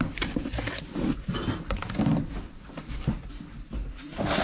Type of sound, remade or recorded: recorded